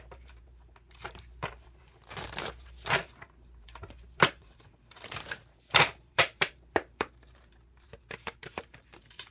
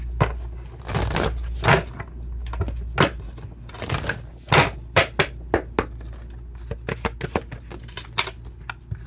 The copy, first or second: first